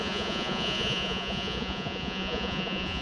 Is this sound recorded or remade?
remade